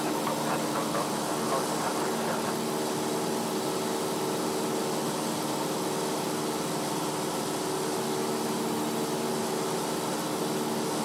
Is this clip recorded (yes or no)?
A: yes